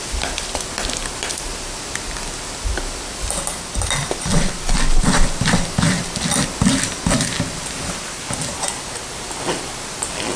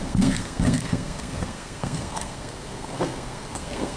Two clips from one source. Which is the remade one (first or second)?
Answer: second